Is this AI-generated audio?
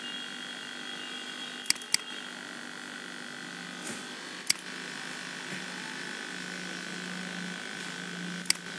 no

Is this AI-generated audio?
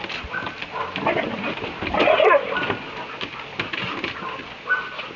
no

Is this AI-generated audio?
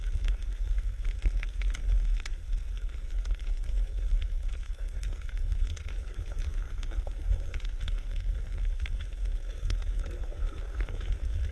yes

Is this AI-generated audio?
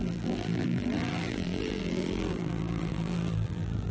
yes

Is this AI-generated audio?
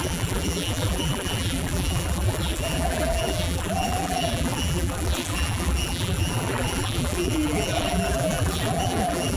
yes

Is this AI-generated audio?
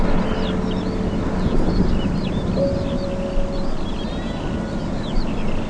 no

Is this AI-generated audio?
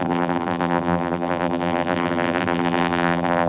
yes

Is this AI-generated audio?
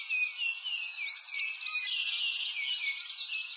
no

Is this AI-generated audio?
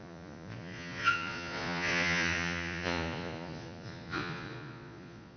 yes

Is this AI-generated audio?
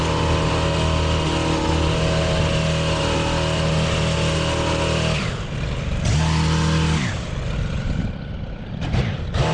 no